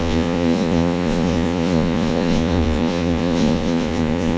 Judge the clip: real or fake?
fake